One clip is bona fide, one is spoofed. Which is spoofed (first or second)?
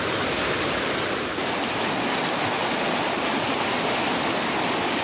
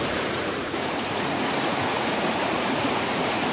second